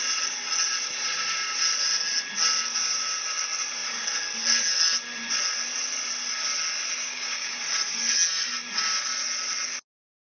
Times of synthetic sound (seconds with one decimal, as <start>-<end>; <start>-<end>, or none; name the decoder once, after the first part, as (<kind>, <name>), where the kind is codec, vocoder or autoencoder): 7.0-7.6 (codec, DAC)